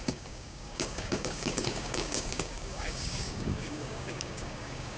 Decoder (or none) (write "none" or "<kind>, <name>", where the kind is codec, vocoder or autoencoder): codec, DAC